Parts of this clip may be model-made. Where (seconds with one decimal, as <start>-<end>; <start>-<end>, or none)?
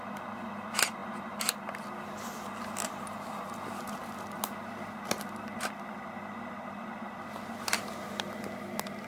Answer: none